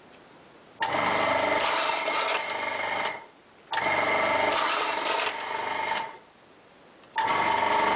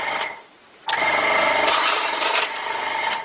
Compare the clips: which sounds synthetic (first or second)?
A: second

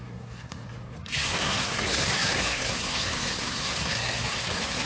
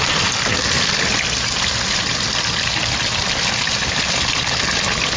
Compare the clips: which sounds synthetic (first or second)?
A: first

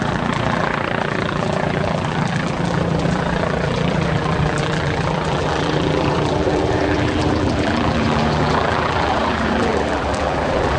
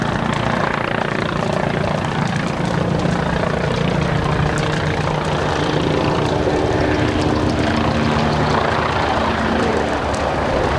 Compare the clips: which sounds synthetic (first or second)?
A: first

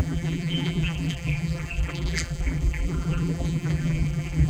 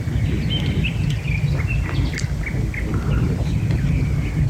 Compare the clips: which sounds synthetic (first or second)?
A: first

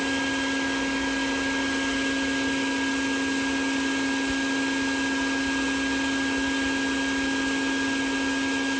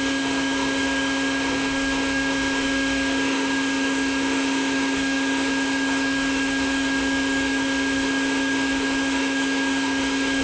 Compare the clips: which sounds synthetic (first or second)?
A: second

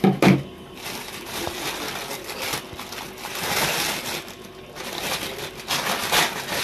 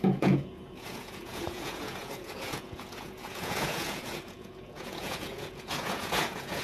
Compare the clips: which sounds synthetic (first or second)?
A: second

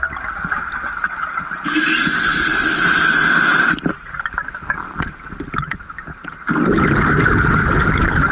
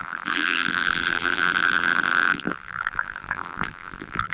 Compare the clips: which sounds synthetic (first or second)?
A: second